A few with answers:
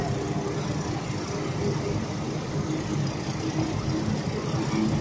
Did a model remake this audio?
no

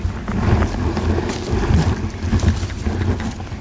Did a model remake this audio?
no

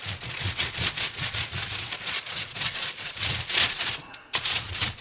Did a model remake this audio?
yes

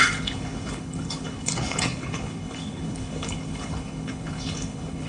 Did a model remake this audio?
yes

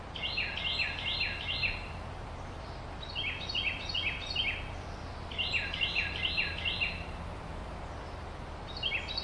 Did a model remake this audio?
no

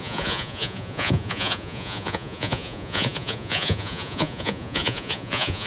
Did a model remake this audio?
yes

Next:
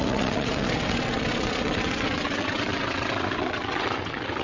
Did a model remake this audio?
yes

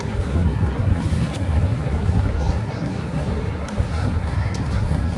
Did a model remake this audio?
yes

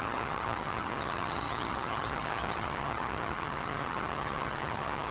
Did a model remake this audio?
yes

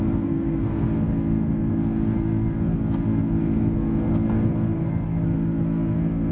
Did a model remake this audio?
yes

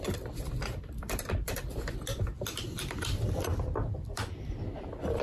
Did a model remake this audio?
yes